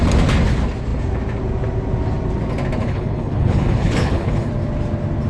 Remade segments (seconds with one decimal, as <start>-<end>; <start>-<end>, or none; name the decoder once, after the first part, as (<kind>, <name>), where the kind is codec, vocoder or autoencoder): 2.8-4.5 (codec, HILCodec)